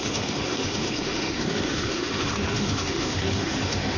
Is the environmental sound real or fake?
fake